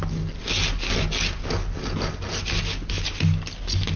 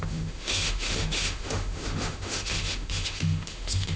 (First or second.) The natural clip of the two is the first